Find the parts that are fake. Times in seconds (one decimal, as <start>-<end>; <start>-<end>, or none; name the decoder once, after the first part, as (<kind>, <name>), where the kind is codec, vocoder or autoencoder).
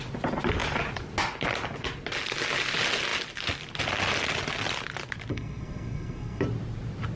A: 5.3-6.4 (codec, SNAC)